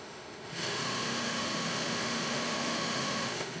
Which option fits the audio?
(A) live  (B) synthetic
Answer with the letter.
B